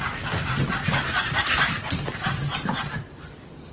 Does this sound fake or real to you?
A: fake